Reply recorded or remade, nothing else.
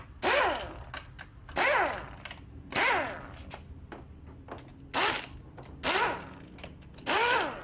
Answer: recorded